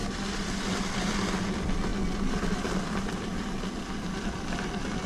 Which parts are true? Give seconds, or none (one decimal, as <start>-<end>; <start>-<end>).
0.0-5.1